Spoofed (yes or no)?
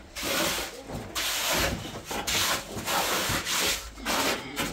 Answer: no